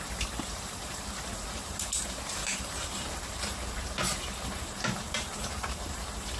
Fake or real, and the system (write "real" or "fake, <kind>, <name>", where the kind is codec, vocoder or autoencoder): fake, vocoder, BigVGAN v2